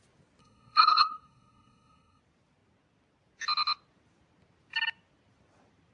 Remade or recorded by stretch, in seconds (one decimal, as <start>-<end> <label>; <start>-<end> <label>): 0.0-0.4 recorded; 0.4-2.2 remade; 2.2-5.9 recorded